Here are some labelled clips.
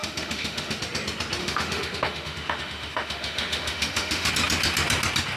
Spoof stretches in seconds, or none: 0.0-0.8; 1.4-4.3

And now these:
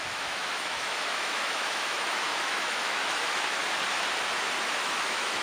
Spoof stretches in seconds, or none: 0.0-3.6; 4.6-5.4

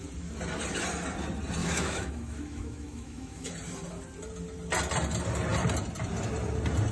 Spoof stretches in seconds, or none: 1.6-3.5